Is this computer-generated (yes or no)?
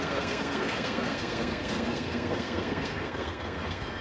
yes